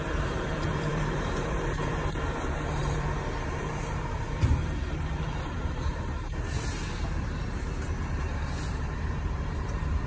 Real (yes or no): no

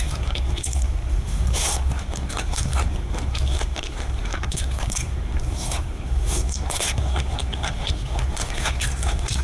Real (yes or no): no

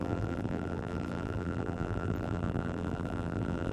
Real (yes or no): no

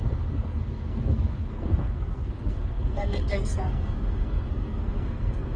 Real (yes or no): no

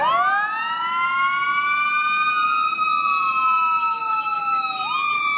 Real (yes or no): yes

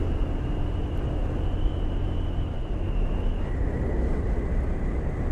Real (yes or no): yes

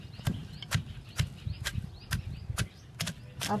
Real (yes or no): yes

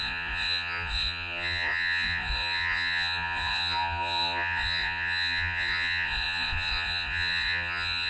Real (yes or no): no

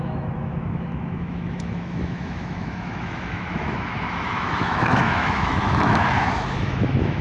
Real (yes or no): no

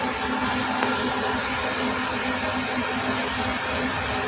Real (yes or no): yes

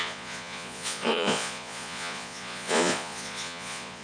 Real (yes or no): no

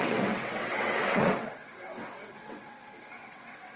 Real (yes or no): no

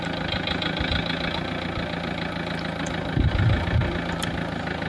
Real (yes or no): yes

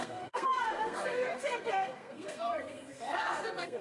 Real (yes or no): no